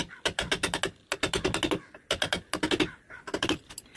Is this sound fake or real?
real